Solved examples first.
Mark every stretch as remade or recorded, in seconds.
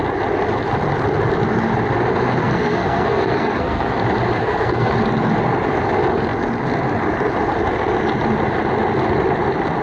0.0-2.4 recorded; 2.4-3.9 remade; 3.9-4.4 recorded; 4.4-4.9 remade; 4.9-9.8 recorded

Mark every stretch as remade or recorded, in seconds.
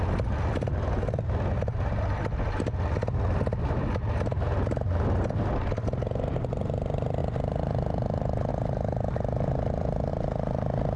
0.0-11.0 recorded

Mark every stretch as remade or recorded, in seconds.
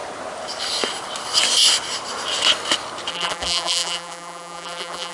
0.0-3.1 recorded; 3.1-5.1 remade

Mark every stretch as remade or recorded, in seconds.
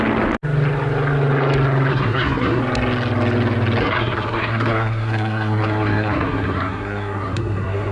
0.0-1.9 recorded; 1.9-2.6 remade; 2.6-3.8 recorded; 3.8-7.9 remade